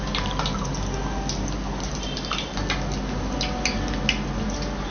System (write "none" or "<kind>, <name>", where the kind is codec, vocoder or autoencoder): none